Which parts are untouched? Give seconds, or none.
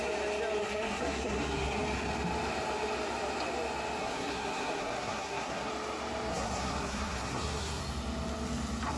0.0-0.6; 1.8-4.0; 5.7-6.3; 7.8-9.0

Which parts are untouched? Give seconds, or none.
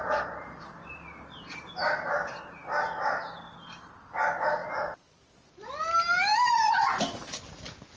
0.0-8.0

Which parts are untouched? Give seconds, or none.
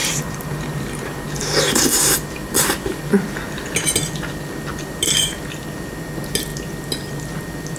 3.1-4.7; 5.4-7.8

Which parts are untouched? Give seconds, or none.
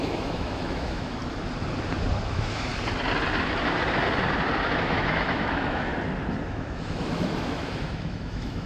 1.2-2.3; 2.7-4.8; 5.9-6.5